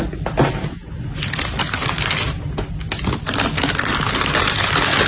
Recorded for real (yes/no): yes